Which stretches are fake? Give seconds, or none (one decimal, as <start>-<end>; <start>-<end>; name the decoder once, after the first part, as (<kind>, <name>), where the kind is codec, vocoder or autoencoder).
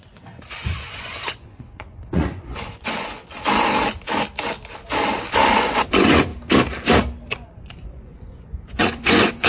0.0-3.2 (vocoder, Vocos); 5.6-6.3; 7.3-9.5